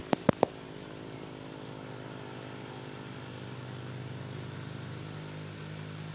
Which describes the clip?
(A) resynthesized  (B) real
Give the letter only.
B